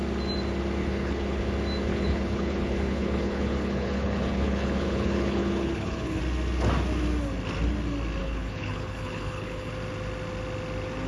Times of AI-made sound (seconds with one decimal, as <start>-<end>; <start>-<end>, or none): 0.8-1.4; 1.9-6.2; 8.2-9.7